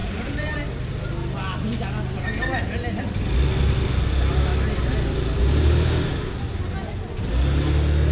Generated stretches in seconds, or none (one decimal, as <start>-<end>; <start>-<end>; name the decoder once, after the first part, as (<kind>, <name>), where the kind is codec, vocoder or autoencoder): 0.0-0.9 (vocoder, BigVGAN v2)